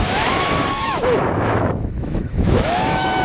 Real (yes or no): no